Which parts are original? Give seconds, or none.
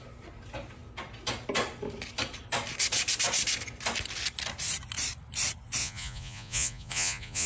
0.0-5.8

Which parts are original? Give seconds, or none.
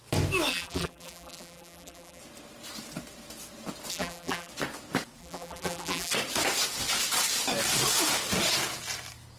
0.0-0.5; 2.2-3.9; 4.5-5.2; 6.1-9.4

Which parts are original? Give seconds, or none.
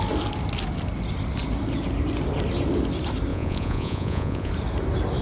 0.0-3.3; 4.5-5.2